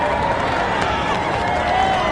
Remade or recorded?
recorded